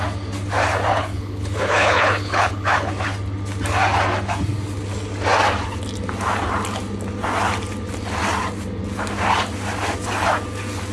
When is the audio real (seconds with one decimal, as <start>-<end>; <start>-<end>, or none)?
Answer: 0.0-0.9; 2.9-10.9